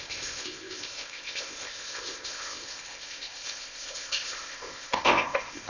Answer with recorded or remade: remade